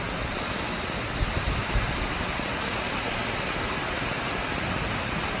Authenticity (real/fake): real